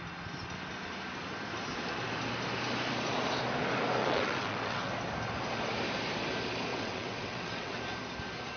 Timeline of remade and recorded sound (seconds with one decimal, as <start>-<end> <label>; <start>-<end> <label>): 0.0-4.0 recorded; 4.0-4.9 remade; 4.9-6.7 recorded; 6.7-7.8 remade; 7.8-8.6 recorded